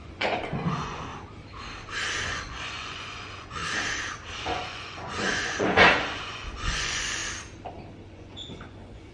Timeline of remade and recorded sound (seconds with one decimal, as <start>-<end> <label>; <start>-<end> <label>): 0.0-1.1 remade; 1.1-2.2 recorded; 2.2-3.6 remade; 3.6-4.4 recorded; 4.4-7.2 remade; 7.2-8.1 recorded; 8.1-9.1 remade